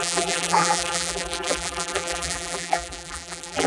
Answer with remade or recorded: remade